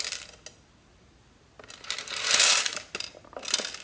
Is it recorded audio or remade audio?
recorded